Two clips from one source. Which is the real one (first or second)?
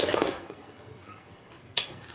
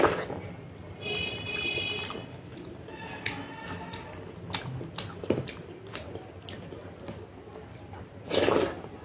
second